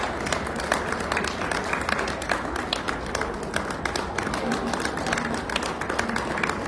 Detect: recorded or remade recorded